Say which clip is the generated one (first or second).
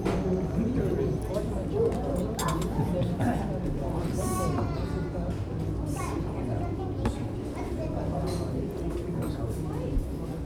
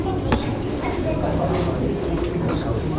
second